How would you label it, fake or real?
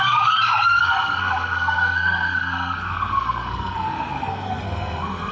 fake